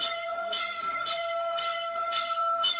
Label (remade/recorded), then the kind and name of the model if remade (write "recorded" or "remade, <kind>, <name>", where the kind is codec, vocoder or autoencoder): remade, codec, SNAC